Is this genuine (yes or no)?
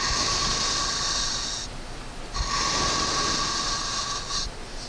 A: yes